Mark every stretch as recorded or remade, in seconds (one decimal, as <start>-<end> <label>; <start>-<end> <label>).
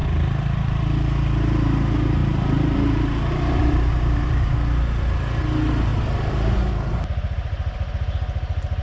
0.0-0.8 remade; 0.8-2.2 recorded; 2.2-4.5 remade; 4.5-8.8 recorded